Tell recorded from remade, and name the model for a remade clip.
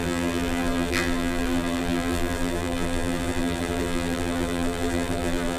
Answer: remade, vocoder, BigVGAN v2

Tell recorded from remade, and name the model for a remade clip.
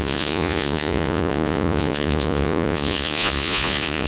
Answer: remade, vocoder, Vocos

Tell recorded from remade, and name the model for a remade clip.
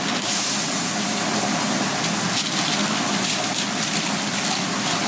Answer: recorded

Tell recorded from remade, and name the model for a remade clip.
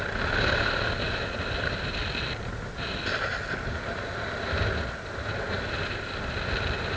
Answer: recorded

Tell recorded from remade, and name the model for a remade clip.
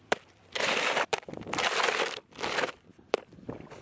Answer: remade, vocoder, BigVGAN v2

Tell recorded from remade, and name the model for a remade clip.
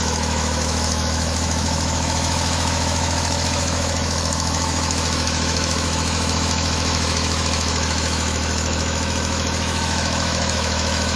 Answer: remade, autoencoder, DAC-VAE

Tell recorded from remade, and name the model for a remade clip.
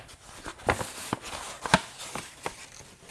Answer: recorded